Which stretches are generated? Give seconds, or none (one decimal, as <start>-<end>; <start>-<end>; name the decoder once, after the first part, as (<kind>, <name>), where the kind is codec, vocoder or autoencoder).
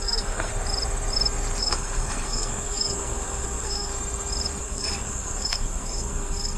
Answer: 0.0-0.5 (codec, SNAC); 1.6-3.9; 4.6-6.6